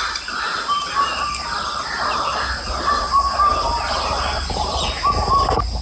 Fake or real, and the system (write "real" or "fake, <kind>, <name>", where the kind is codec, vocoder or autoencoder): real